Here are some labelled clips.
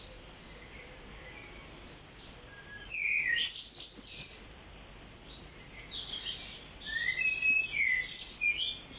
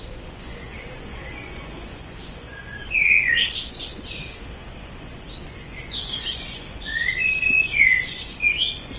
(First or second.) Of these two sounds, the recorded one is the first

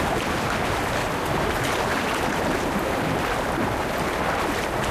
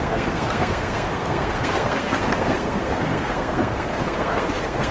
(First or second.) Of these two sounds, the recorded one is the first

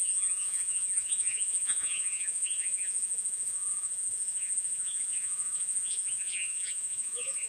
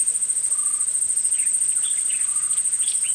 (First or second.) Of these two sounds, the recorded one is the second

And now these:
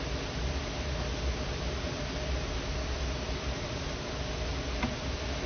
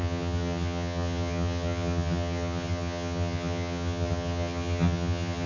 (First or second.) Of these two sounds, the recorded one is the first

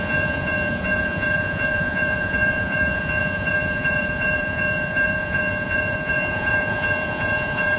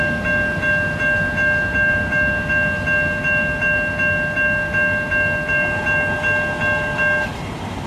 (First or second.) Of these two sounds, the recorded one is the second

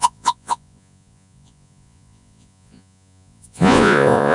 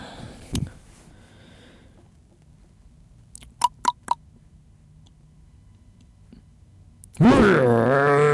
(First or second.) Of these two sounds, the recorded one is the second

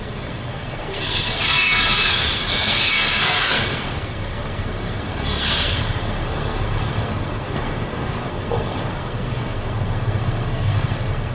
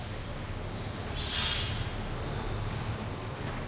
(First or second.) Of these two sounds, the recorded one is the second